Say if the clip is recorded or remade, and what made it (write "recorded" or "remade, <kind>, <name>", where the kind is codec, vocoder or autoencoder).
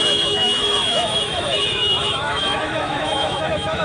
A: remade, autoencoder, DAC-VAE